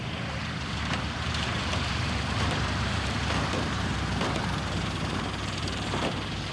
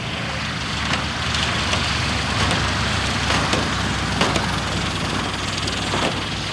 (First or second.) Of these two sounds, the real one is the second